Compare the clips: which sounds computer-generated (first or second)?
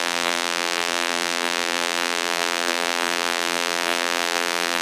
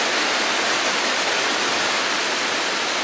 first